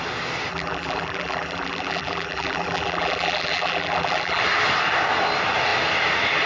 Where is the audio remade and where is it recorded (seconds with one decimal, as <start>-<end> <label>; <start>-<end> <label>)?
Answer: 0.0-0.5 recorded; 0.5-4.4 remade; 4.4-6.5 recorded